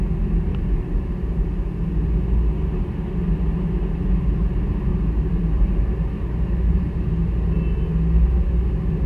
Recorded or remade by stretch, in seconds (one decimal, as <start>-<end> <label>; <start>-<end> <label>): 0.0-0.5 recorded; 0.5-1.4 remade; 1.4-4.9 recorded; 4.9-7.1 remade; 7.1-9.1 recorded